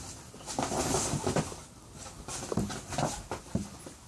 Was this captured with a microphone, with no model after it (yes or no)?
yes